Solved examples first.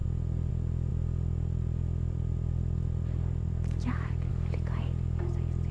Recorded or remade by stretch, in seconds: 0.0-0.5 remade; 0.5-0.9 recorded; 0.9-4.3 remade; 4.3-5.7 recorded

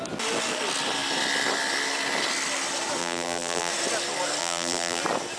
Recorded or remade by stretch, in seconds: 0.0-3.0 recorded; 3.0-3.7 remade; 3.7-4.4 recorded; 4.4-5.0 remade; 5.0-5.4 recorded

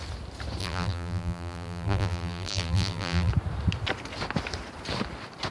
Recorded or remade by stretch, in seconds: 0.0-0.6 recorded; 0.6-3.3 remade; 3.3-5.5 recorded

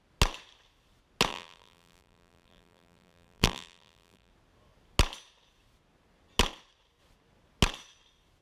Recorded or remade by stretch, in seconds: 0.0-1.3 recorded; 1.3-4.3 remade; 4.3-8.4 recorded

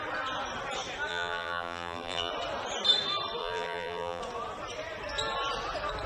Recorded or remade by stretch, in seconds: 0.0-1.1 recorded; 1.1-2.3 remade; 2.3-3.4 recorded; 3.4-4.2 remade; 4.2-6.1 recorded

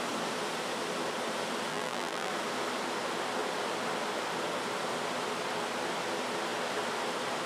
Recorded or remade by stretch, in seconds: 0.0-1.7 recorded; 1.7-2.3 remade; 2.3-7.5 recorded

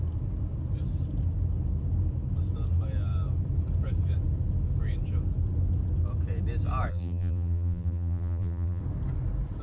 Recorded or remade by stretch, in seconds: 0.0-6.9 recorded; 6.9-8.8 remade; 8.8-9.6 recorded

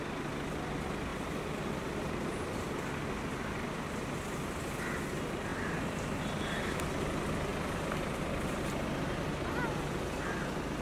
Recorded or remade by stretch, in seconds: 0.0-5.5 recorded; 5.5-6.2 remade; 6.2-7.5 recorded; 7.5-8.9 remade; 8.9-10.8 recorded